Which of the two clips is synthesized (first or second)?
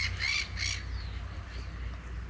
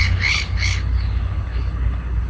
second